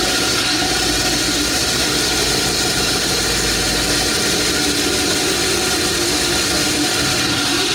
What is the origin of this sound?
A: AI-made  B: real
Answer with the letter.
B